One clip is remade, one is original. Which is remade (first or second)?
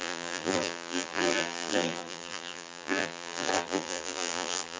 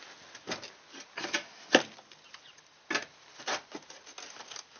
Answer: first